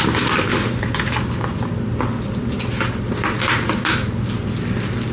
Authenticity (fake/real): real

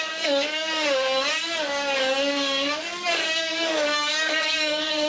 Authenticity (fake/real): fake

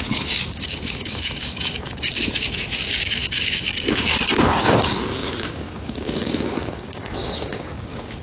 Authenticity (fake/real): fake